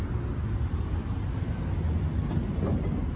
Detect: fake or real real